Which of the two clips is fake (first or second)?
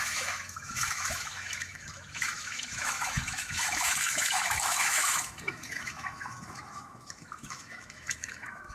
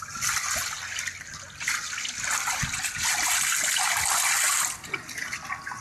first